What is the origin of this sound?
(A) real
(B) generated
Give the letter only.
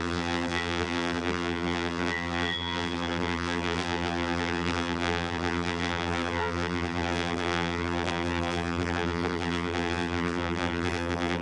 B